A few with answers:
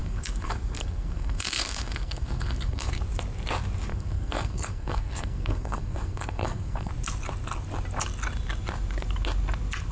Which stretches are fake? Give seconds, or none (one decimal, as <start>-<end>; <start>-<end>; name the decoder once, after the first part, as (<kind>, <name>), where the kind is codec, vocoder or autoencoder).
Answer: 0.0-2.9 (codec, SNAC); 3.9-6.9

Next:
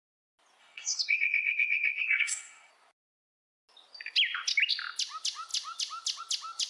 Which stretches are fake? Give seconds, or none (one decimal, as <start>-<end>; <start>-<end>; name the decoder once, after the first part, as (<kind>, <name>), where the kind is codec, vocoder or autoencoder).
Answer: 0.6-2.7 (codec, SNAC)

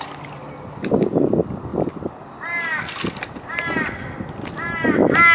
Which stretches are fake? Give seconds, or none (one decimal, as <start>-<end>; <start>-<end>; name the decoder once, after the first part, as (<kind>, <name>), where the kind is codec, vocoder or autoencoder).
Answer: none

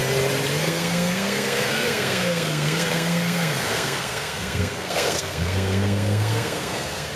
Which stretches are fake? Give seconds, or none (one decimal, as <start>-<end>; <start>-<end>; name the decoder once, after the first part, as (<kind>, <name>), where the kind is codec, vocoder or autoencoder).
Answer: 0.6-7.2 (codec, SNAC)

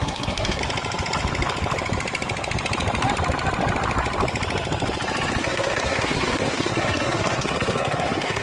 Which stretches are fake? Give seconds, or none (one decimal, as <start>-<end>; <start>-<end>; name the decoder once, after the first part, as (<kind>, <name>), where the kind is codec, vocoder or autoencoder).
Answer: 0.0-0.6 (codec, SNAC); 5.4-8.4

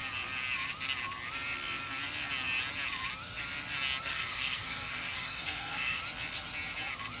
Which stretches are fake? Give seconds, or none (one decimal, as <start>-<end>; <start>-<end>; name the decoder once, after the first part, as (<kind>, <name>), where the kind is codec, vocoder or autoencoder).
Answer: 4.0-6.0 (codec, SNAC)